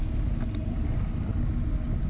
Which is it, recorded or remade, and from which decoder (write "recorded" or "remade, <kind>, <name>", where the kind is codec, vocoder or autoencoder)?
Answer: recorded